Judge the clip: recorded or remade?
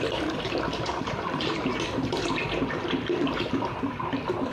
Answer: remade